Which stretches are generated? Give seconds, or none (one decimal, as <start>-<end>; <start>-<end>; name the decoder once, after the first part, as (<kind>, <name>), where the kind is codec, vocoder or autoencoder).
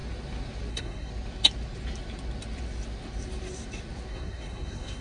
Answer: 0.7-1.1 (codec, SNAC); 4.1-5.0